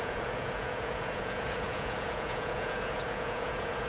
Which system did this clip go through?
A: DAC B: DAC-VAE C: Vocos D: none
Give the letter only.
C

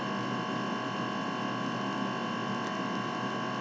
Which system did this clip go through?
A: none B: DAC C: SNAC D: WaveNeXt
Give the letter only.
A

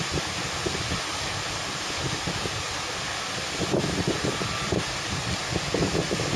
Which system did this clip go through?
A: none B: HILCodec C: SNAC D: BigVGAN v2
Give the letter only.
A